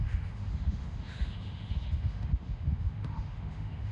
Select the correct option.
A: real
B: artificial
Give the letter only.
B